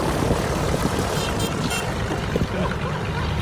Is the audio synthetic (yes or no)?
no